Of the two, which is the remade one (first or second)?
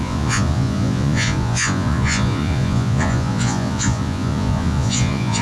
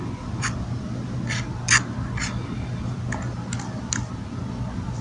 first